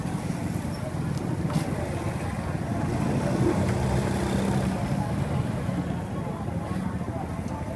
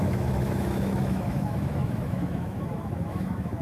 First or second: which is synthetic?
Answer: second